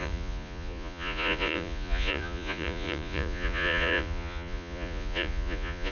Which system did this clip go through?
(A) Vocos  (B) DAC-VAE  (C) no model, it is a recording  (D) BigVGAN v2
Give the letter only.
A